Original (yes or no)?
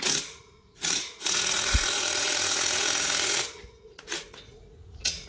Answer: no